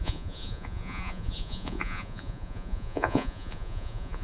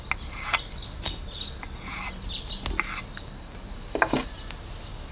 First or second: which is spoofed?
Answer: first